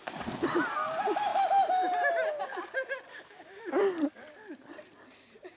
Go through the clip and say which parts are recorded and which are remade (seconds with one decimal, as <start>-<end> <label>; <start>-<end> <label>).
0.0-3.1 recorded; 3.1-3.8 remade; 3.8-5.6 recorded